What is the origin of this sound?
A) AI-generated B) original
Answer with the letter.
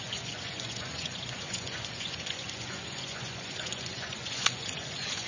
A